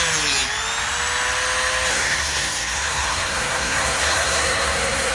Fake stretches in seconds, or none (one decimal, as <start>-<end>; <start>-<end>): 1.9-5.1